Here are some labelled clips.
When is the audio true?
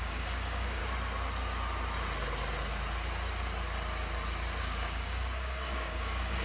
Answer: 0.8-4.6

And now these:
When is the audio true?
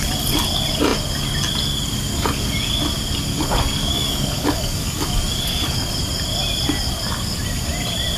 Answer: 0.0-2.1; 2.8-3.3; 5.9-8.2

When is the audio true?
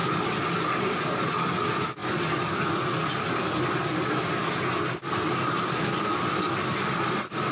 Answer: 0.0-7.5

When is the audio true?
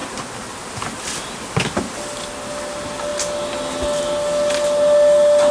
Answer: 0.0-5.5